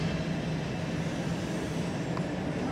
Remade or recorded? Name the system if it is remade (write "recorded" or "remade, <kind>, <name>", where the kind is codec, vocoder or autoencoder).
recorded